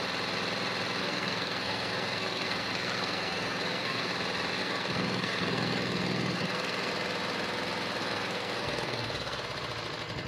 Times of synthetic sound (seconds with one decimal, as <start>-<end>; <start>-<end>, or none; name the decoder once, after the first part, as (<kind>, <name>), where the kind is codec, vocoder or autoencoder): 1.0-4.1 (codec, SNAC); 4.6-6.9; 8.0-9.4